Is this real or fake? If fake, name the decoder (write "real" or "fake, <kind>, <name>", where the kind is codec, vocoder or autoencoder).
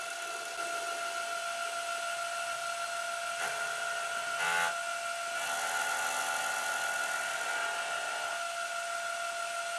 real